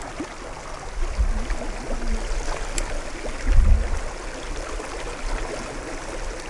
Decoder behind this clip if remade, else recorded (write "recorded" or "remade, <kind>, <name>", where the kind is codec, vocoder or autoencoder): recorded